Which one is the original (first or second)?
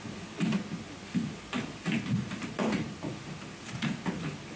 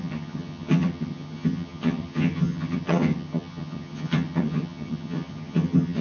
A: first